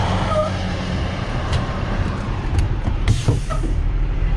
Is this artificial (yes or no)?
yes